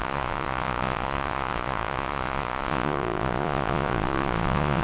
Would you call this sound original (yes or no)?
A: no